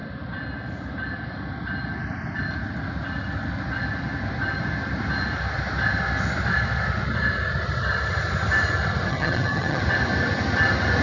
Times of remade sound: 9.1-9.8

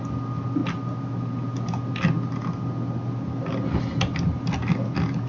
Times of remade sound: none

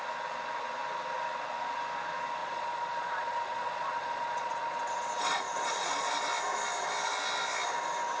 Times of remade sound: 2.4-6.1

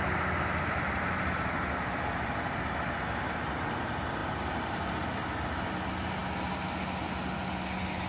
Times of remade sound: none

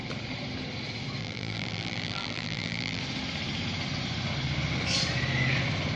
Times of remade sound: 1.2-3.0

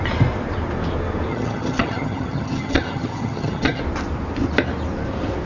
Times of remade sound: 1.3-3.8

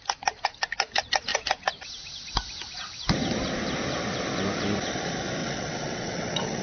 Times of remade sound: 5.4-6.6

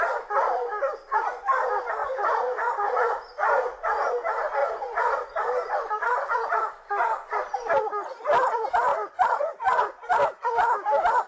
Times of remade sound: 2.0-4.1; 4.6-5.5; 8.9-10.1